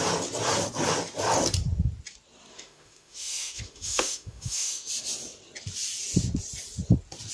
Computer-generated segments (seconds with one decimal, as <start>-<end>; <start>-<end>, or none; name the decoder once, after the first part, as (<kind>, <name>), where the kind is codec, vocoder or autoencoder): 2.5-4.9 (autoencoder, DAC-VAE)